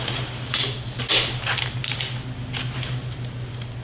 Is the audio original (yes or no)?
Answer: yes